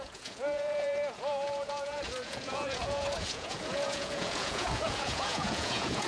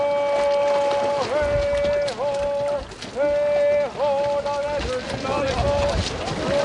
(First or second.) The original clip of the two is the second